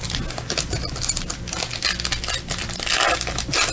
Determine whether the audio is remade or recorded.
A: recorded